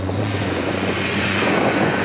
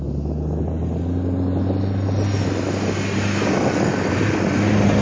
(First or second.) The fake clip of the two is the first